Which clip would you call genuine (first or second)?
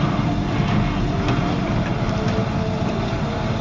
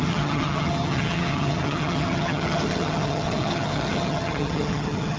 first